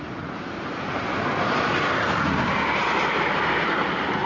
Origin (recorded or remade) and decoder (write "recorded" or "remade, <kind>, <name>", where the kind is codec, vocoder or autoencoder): recorded